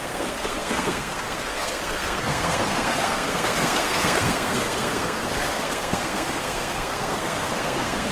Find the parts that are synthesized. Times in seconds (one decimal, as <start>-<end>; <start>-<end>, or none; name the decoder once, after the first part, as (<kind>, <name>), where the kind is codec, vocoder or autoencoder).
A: 0.0-8.1 (codec, SNAC)